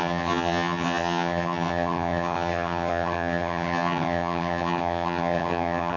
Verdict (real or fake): fake